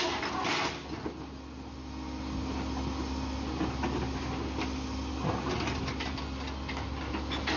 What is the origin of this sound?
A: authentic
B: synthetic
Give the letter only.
A